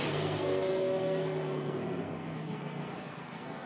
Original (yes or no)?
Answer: no